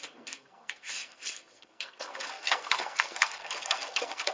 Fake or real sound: fake